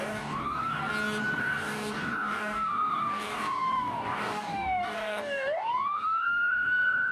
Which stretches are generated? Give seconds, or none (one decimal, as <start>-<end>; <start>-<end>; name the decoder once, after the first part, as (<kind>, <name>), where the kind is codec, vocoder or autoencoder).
0.0-0.8 (codec, DAC); 1.4-7.1